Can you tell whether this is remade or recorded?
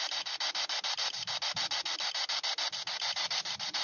recorded